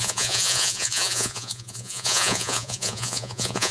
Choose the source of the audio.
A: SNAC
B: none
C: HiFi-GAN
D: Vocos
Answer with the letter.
D